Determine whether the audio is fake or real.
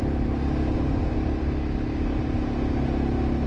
real